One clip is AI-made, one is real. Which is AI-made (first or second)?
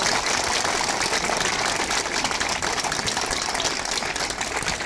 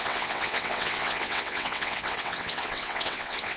second